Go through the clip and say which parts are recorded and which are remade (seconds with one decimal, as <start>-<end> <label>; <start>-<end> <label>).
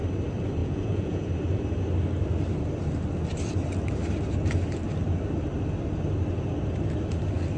0.0-0.6 recorded; 0.6-1.3 remade; 1.3-7.6 recorded